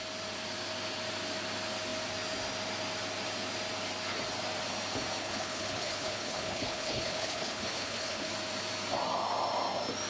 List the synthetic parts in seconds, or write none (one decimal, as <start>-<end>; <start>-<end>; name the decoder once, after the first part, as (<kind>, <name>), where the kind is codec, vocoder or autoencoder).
5.2-8.3 (codec, HILCodec)